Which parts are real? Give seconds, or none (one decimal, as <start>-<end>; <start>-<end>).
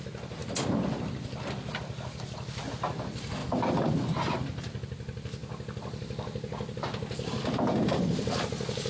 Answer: 0.0-8.9